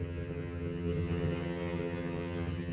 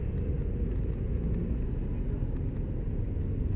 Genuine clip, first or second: second